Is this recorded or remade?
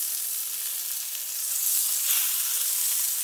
recorded